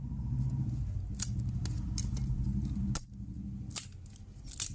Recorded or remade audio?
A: recorded